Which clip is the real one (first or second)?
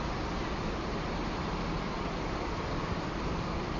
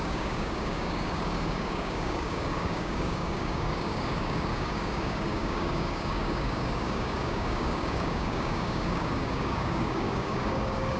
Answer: first